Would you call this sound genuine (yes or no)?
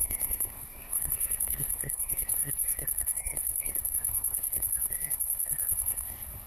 no